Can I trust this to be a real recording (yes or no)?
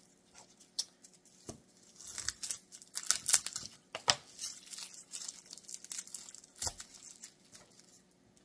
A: yes